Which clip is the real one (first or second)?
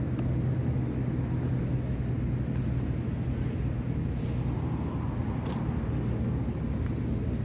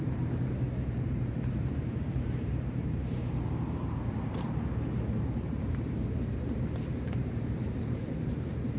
first